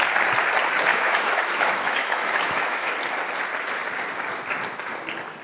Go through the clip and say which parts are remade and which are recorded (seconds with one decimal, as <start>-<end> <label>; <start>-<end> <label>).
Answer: 0.0-0.9 recorded; 0.9-2.9 remade; 2.9-5.4 recorded